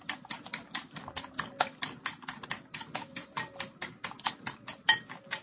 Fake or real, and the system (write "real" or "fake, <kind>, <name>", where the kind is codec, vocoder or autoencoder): real